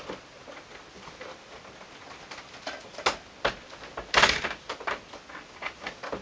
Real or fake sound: real